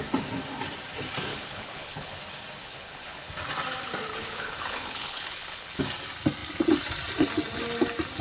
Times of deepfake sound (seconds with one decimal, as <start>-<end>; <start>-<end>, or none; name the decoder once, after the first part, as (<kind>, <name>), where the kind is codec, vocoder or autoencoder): 1.3-2.2 (codec, HILCodec); 2.6-3.3; 4.1-5.8